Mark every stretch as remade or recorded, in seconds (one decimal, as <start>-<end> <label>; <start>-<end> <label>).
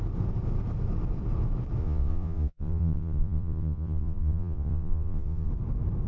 0.0-1.8 recorded; 1.8-5.5 remade; 5.5-6.1 recorded